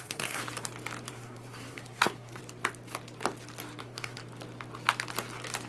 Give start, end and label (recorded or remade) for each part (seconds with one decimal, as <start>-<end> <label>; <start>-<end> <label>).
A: 0.0-0.4 remade; 0.4-1.1 recorded; 1.1-2.4 remade; 2.4-3.8 recorded; 3.8-4.2 remade; 4.2-5.7 recorded